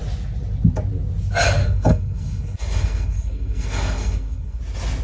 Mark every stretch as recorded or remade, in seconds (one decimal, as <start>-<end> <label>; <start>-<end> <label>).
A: 0.0-1.6 recorded; 1.6-4.6 remade; 4.6-5.0 recorded